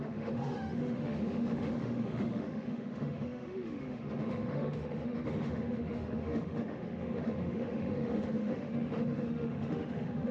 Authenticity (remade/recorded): remade